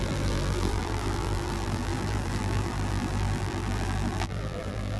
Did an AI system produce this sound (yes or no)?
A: yes